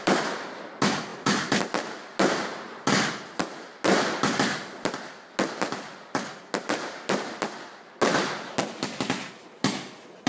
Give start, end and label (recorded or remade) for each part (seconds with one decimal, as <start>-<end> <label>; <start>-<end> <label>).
0.0-10.3 recorded